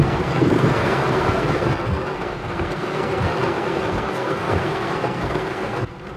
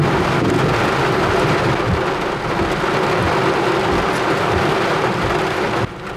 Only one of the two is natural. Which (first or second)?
second